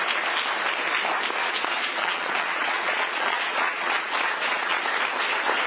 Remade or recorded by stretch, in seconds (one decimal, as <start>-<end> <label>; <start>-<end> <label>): 0.0-1.4 recorded; 1.4-4.8 remade; 4.8-5.7 recorded